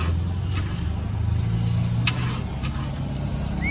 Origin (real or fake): real